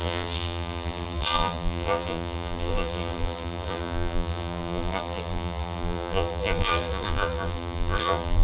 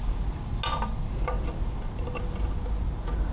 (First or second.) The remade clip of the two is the first